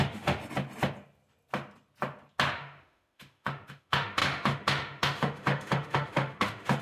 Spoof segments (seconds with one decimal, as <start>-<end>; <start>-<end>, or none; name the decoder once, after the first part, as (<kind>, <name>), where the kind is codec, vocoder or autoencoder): 0.0-0.4 (autoencoder, DAC-VAE); 2.5-6.8